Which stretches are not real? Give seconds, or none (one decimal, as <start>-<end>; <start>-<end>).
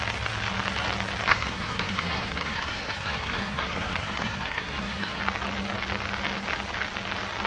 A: 1.3-5.2